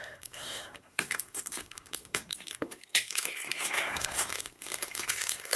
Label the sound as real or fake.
fake